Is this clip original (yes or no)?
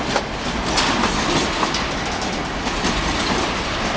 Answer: yes